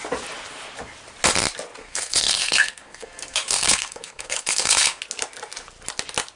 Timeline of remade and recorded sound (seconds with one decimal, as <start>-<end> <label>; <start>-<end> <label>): 0.0-1.8 recorded; 1.8-5.0 remade; 5.0-6.4 recorded